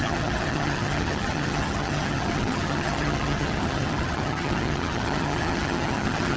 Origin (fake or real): fake